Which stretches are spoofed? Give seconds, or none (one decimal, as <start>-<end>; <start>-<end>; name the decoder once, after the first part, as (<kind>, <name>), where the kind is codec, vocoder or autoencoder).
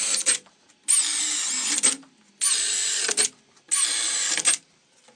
none